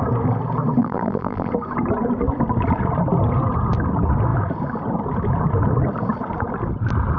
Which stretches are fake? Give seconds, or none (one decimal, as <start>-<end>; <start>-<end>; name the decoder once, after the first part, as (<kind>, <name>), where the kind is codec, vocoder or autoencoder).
0.8-1.5 (vocoder, BigVGAN v2)